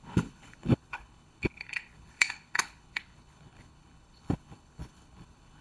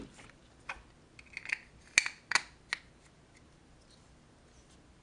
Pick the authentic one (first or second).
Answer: second